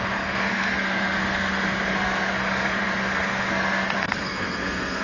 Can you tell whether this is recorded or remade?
remade